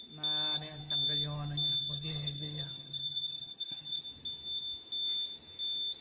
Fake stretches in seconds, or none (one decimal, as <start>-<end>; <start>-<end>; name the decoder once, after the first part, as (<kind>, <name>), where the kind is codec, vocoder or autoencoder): 1.8-4.0 (vocoder, HiFi-GAN)